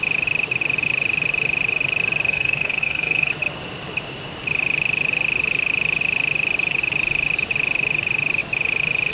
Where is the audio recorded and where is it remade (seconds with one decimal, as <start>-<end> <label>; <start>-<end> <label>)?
0.0-2.3 recorded; 2.3-3.3 remade; 3.3-9.1 recorded